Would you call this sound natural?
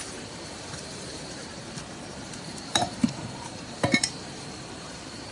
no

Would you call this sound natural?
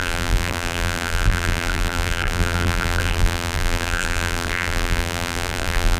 no